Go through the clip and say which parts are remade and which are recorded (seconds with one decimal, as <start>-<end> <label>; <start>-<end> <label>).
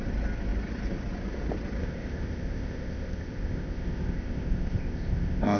0.0-1.8 recorded; 1.8-5.6 remade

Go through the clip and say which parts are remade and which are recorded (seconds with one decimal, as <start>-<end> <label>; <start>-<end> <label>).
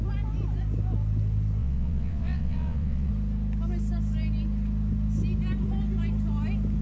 0.0-1.6 recorded; 1.6-3.1 remade; 3.1-6.8 recorded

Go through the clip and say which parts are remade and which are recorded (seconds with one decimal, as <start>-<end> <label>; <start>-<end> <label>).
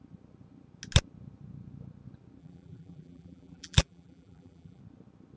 0.0-2.4 recorded; 2.4-4.8 remade; 4.8-5.4 recorded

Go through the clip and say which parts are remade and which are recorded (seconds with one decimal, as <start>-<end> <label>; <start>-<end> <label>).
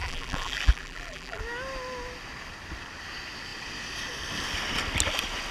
0.0-1.4 remade; 1.4-5.5 recorded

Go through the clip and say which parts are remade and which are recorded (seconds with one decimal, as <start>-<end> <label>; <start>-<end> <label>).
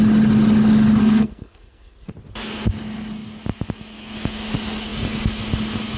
0.0-1.0 recorded; 1.0-2.1 remade; 2.1-6.0 recorded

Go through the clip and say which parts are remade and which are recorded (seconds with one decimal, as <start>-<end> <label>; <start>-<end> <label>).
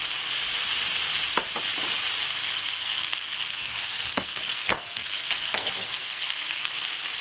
0.0-2.4 recorded; 2.4-6.7 remade; 6.7-7.2 recorded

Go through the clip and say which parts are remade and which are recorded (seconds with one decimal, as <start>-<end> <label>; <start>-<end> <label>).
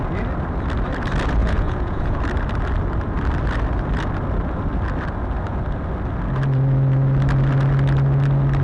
0.0-1.4 recorded; 1.4-2.2 remade; 2.2-8.6 recorded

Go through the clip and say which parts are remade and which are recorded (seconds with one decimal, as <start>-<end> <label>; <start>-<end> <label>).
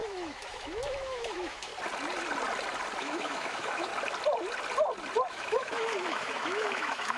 0.0-1.7 remade; 1.7-3.0 recorded; 3.0-3.9 remade; 3.9-5.3 recorded; 5.3-7.2 remade